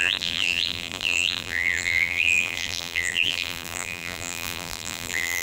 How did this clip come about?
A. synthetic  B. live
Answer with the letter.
A